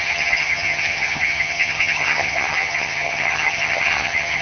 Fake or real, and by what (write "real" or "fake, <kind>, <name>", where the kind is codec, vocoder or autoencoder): fake, vocoder, HiFi-GAN